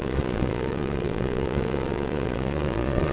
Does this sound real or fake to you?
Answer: fake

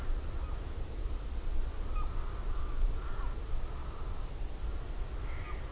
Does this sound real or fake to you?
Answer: real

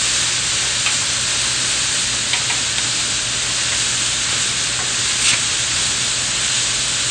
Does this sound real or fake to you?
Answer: real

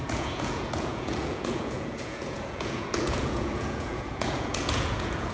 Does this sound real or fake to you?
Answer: fake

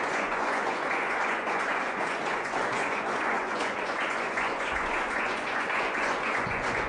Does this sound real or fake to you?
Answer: fake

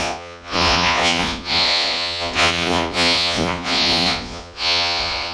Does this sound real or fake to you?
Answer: fake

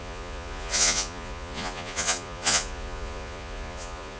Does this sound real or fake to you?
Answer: fake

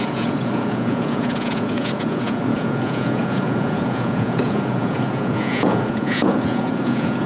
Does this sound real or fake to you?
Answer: fake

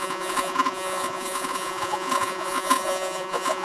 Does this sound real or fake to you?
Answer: fake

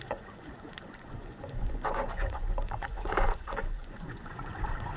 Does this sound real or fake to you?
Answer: fake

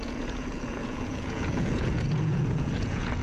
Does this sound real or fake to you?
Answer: fake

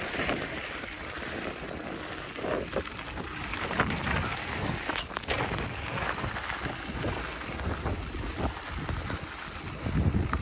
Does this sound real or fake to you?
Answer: real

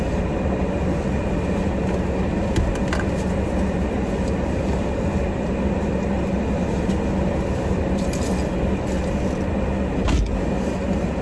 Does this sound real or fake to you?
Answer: real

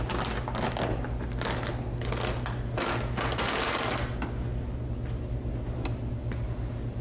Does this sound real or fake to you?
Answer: real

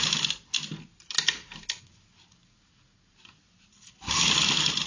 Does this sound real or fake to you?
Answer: real